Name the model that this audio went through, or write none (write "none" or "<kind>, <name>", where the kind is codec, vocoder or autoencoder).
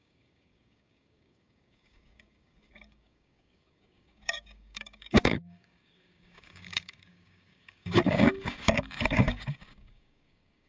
codec, DAC